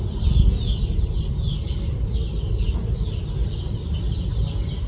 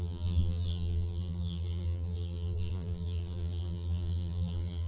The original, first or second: first